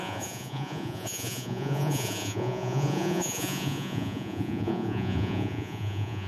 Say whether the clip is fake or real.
fake